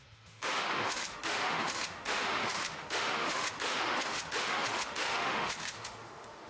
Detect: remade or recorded remade